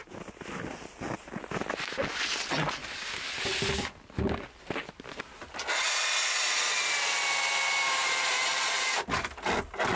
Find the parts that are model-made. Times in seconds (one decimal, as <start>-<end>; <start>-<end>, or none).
2.8-3.4